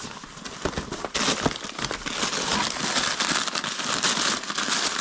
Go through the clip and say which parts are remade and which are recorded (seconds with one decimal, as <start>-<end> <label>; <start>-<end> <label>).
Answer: 0.0-5.0 recorded